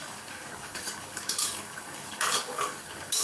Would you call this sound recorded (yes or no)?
no